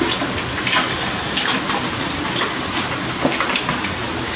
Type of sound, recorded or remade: recorded